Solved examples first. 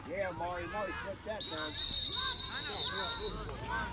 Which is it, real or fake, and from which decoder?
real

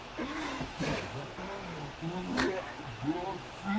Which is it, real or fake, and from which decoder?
fake, autoencoder, DAC-VAE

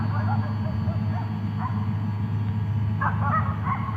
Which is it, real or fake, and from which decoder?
real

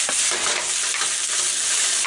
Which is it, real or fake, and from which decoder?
real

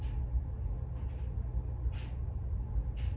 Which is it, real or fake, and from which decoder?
real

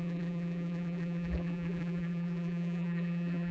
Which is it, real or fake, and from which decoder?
fake, vocoder, BigVGAN v2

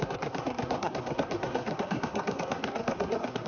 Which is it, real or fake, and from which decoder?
fake, codec, SNAC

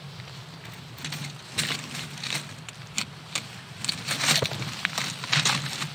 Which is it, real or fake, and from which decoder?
real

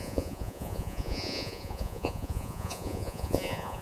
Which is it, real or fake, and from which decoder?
fake, vocoder, Vocos